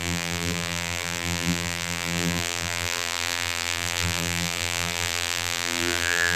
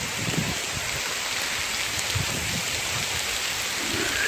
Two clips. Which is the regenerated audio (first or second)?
first